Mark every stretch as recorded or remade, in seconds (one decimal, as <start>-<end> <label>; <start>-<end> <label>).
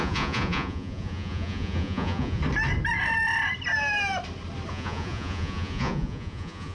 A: 0.0-2.4 remade; 2.4-4.7 recorded; 4.7-6.7 remade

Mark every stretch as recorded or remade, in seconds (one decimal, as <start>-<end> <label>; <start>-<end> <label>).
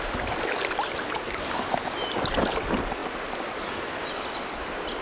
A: 0.0-5.0 recorded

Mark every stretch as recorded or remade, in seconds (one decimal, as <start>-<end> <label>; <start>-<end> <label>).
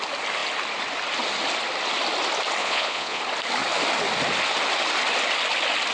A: 0.0-2.6 recorded; 2.6-3.2 remade; 3.2-5.9 recorded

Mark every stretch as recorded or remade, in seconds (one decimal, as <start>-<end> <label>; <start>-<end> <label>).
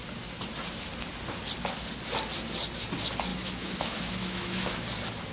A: 0.0-3.3 recorded; 3.3-4.8 remade; 4.8-5.3 recorded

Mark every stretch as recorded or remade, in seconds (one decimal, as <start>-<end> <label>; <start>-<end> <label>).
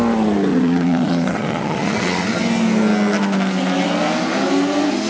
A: 0.0-0.5 recorded; 0.5-2.4 remade; 2.4-5.1 recorded